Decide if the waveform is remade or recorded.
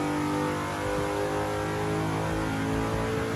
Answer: recorded